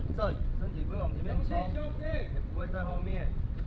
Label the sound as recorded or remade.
remade